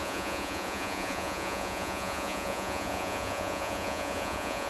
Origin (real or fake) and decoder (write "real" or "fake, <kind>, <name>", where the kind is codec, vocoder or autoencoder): fake, vocoder, Vocos